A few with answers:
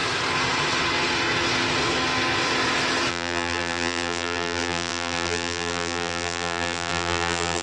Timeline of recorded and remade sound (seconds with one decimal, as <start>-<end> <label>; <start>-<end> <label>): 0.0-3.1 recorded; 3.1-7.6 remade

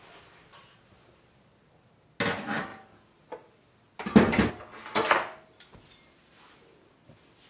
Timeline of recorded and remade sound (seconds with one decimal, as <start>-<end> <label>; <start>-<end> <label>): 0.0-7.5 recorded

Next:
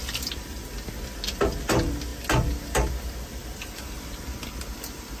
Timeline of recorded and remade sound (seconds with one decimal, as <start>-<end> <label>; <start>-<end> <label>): 0.0-3.4 recorded; 3.4-4.2 remade; 4.2-5.2 recorded

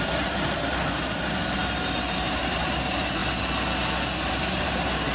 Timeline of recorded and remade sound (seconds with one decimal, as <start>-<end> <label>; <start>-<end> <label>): 0.0-3.2 remade; 3.2-4.3 recorded; 4.3-5.1 remade